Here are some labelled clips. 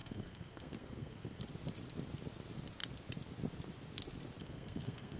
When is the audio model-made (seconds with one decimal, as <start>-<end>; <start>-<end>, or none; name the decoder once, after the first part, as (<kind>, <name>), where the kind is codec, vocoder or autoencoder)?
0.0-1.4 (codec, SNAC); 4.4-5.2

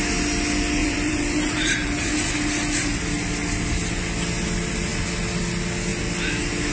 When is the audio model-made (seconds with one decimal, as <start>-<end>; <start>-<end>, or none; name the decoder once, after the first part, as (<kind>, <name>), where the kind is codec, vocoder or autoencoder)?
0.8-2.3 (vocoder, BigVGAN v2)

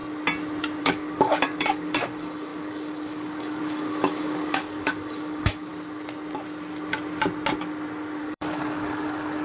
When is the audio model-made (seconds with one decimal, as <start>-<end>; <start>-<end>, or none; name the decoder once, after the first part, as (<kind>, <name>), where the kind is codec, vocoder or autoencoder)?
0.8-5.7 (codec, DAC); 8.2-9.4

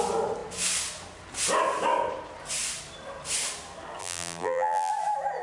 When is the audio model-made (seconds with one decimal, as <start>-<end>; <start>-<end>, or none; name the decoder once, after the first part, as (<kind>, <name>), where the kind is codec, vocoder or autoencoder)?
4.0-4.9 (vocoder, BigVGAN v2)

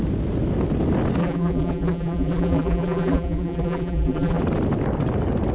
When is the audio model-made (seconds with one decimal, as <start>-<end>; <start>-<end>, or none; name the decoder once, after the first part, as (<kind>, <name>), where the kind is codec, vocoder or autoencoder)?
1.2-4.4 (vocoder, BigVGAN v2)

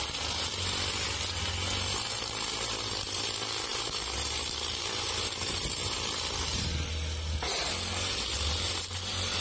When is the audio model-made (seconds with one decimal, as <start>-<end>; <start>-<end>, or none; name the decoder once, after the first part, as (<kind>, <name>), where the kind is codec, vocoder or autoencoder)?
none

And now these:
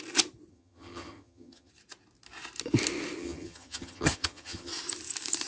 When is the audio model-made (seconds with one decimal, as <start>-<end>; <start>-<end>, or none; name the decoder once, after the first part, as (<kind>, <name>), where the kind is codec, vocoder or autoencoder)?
0.5-1.7 (vocoder, HiFi-GAN); 3.2-4.7

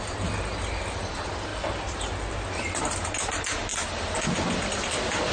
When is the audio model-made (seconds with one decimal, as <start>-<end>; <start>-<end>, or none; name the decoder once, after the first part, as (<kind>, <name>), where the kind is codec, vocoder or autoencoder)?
none